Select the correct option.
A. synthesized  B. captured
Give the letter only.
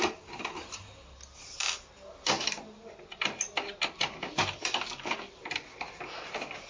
B